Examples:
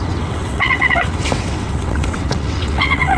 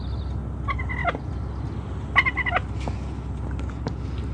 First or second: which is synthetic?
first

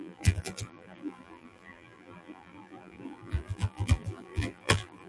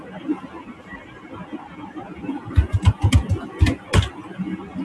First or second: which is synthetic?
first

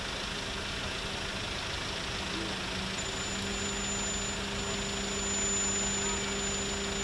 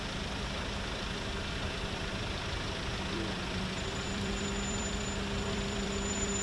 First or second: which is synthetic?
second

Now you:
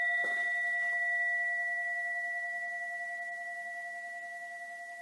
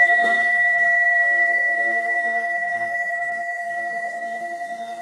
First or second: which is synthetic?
second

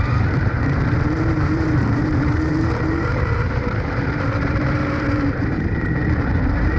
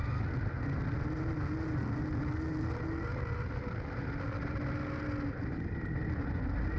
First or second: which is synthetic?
first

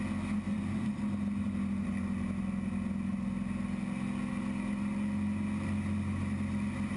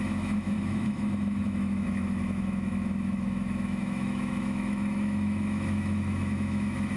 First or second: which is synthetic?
second